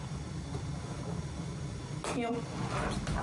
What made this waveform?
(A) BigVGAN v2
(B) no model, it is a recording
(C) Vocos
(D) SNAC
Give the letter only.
B